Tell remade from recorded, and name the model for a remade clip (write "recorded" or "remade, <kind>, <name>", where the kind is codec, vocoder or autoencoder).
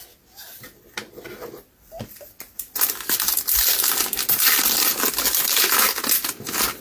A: recorded